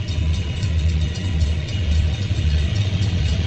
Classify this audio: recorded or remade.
remade